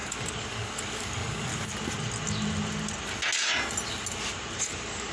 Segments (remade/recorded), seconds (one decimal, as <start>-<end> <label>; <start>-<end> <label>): 0.0-1.5 remade; 1.5-4.6 recorded; 4.6-5.1 remade